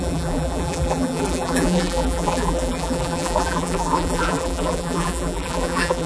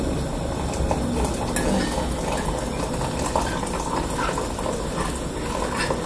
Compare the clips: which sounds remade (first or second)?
first